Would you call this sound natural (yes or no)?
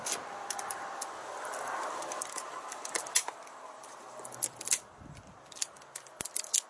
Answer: yes